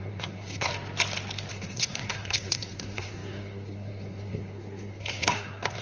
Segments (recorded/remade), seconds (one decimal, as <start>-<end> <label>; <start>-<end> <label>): 0.0-0.7 remade; 0.7-1.5 recorded; 1.5-5.8 remade

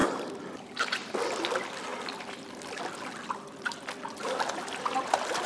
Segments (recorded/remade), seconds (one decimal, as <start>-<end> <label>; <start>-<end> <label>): 0.0-1.9 recorded; 1.9-2.8 remade; 2.8-5.5 recorded

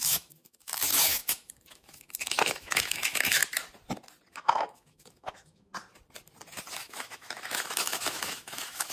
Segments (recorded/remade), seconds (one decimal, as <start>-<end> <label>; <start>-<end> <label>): 0.0-3.4 remade; 3.4-4.3 recorded; 4.3-5.7 remade; 5.7-6.7 recorded; 6.7-8.9 remade

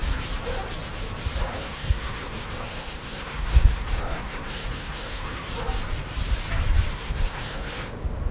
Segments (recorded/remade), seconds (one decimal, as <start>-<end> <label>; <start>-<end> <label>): 0.0-1.5 recorded; 1.5-5.5 remade; 5.5-6.9 recorded; 6.9-7.9 remade; 7.9-8.3 recorded

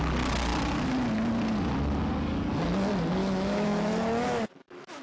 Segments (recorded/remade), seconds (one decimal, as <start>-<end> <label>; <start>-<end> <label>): 0.0-3.2 recorded; 3.2-5.0 remade

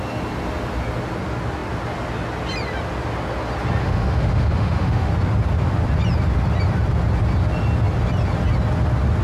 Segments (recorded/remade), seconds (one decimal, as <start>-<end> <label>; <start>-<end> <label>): 0.0-3.8 recorded; 3.8-5.1 remade; 5.1-9.2 recorded

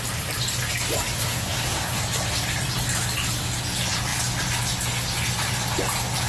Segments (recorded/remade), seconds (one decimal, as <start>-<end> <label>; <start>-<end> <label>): 0.0-1.2 recorded; 1.2-2.0 remade; 2.0-6.3 recorded